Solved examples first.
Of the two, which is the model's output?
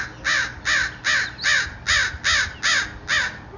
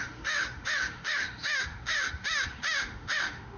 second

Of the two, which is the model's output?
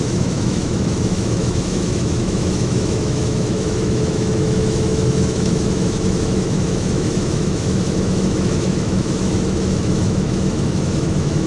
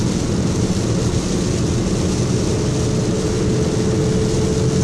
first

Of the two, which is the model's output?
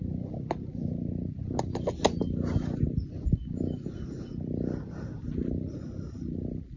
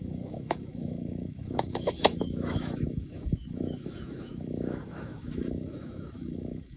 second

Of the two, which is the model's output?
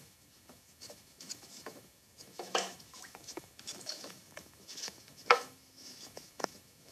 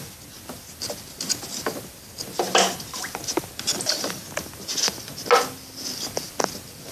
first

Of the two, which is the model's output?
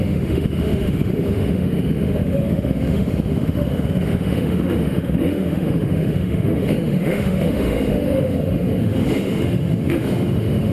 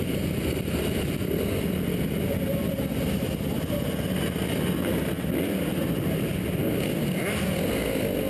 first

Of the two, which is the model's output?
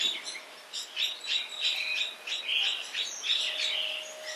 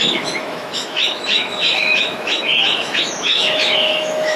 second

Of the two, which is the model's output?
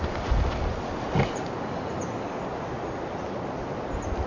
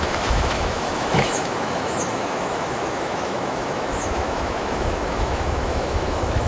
second